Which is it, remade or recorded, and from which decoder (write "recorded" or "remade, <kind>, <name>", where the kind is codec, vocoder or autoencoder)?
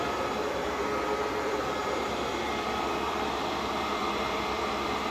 remade, vocoder, BigVGAN v2